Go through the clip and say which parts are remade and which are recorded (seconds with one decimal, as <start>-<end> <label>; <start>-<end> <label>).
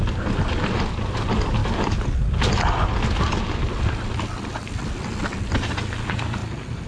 0.0-1.6 remade; 1.6-5.7 recorded; 5.7-6.4 remade; 6.4-6.9 recorded